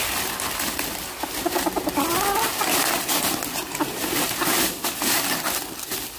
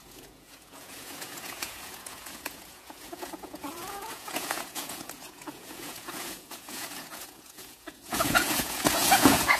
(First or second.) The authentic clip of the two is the first